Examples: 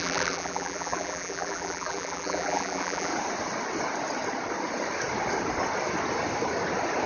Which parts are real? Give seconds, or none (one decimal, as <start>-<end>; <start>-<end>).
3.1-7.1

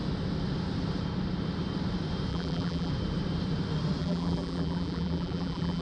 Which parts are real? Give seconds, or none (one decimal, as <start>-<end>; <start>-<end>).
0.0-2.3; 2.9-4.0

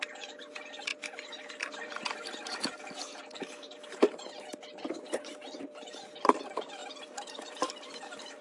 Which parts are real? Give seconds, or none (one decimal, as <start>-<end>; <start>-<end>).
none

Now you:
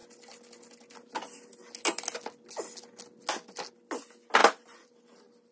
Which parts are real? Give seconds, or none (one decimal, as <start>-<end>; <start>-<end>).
0.0-4.4; 5.0-5.5

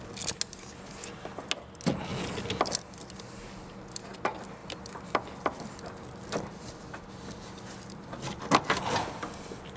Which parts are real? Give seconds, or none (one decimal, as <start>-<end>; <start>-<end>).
0.0-4.6; 8.8-9.8

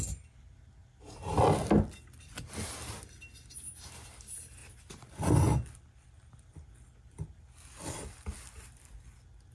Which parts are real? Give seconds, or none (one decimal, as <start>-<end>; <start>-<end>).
0.0-9.5

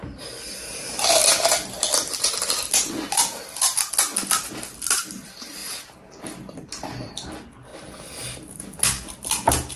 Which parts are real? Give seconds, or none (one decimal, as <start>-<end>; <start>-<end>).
0.0-5.6; 7.1-7.7; 8.6-9.8